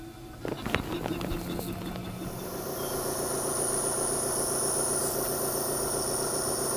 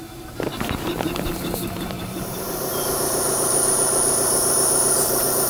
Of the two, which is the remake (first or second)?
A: second